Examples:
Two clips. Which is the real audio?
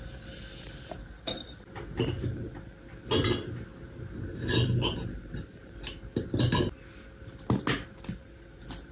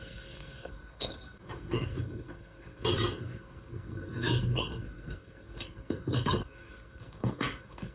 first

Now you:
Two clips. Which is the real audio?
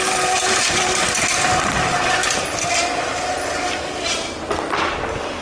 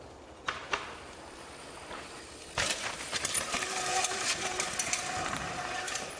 first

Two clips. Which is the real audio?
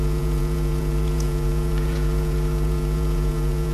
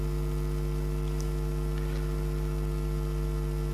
second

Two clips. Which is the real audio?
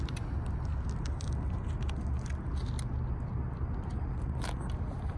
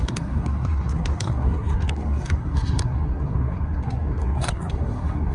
first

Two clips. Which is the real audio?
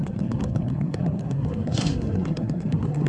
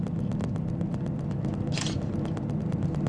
second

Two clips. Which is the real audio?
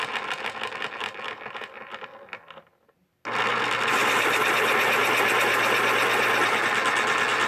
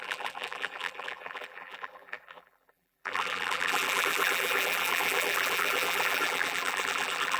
first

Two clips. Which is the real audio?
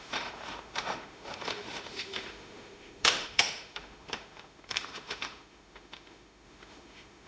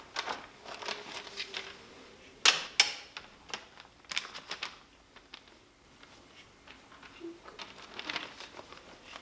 second